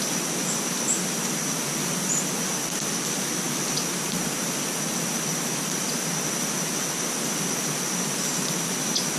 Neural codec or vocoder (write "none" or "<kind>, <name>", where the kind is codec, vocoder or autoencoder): none